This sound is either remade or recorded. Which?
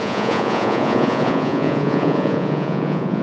remade